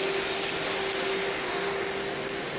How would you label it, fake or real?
real